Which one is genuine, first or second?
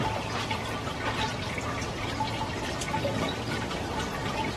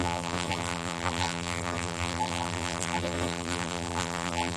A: first